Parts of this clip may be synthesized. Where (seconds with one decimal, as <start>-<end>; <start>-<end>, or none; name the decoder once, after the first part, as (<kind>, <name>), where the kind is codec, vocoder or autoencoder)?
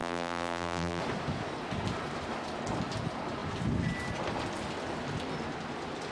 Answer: 0.0-1.0 (vocoder, BigVGAN v2)